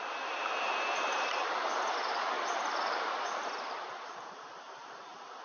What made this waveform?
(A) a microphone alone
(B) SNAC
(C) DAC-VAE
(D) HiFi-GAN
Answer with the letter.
A